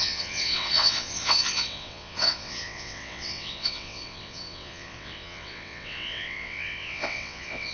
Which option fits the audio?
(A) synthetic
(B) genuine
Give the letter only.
A